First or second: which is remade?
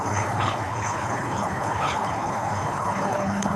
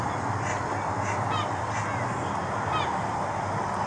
first